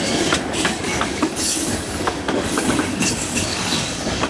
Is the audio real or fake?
fake